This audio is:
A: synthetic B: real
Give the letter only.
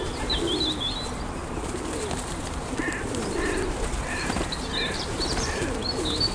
B